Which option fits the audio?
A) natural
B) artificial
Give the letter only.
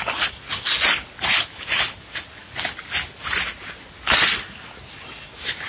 A